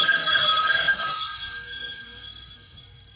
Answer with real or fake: fake